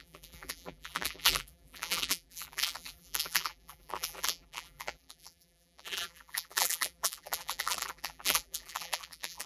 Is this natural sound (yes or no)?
no